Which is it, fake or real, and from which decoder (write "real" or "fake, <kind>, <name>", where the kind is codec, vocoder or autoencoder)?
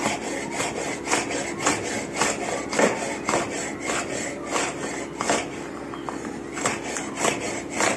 real